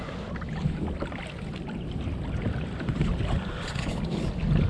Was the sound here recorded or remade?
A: recorded